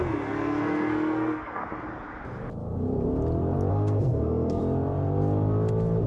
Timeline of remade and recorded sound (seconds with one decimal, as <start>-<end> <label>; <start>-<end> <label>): 0.0-1.6 remade; 1.6-3.7 recorded; 3.7-4.6 remade; 4.6-6.1 recorded